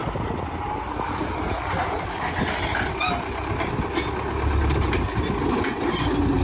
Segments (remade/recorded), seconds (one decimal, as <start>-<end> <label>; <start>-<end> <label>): 0.0-2.9 remade; 2.9-6.4 recorded